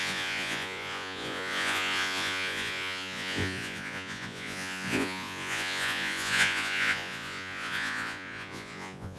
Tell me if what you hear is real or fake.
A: fake